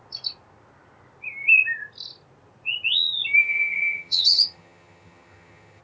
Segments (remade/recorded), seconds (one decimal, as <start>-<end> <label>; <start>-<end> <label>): 0.0-3.4 recorded; 3.4-5.8 remade